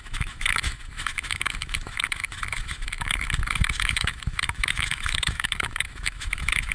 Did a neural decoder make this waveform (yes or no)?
yes